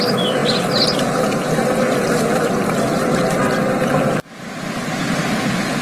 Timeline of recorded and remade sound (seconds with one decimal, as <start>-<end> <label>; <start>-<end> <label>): 0.0-5.8 recorded